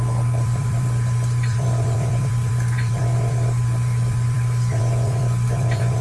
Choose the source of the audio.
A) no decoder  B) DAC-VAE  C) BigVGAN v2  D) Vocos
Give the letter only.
C